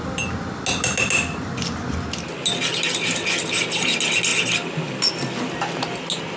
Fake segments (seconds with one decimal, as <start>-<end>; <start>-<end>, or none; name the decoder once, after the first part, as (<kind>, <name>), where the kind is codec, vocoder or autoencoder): none